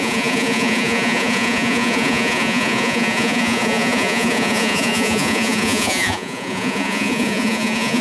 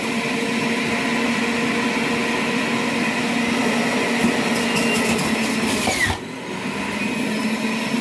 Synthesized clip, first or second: first